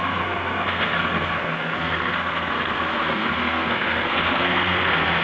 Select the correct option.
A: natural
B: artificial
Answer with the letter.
B